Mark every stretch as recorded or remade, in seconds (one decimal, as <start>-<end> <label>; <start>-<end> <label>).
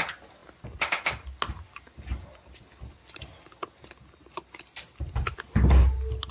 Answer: 0.0-6.3 recorded